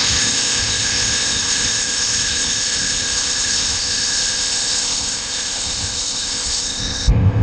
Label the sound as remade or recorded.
remade